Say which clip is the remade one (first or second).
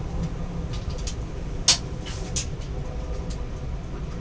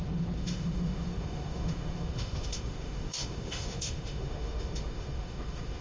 second